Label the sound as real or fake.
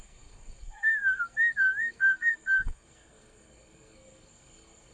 fake